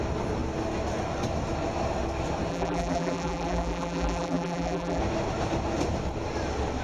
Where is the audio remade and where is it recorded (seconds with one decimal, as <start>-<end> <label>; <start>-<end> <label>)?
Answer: 0.0-2.5 recorded; 2.5-5.0 remade; 5.0-6.8 recorded